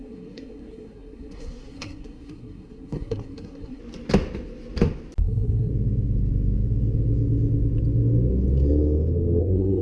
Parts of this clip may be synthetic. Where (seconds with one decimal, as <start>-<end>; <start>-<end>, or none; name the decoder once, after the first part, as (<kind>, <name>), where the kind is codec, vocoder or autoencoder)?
0.0-3.8 (codec, SNAC); 5.2-5.7; 9.4-9.8